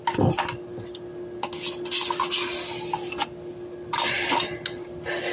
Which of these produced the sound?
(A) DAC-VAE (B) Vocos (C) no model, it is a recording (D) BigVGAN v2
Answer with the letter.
C